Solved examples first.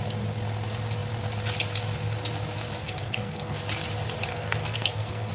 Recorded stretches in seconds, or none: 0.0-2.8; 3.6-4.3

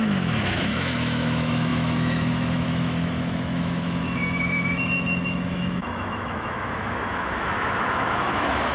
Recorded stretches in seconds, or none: none

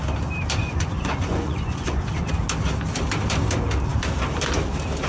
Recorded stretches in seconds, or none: 0.0-0.6; 2.3-5.1

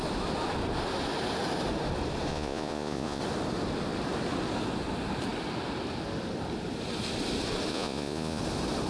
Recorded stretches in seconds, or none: 0.0-2.3; 3.2-7.7; 8.4-8.9

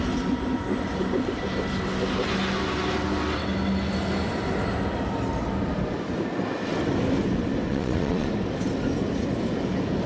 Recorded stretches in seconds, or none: 0.0-7.7; 8.3-10.1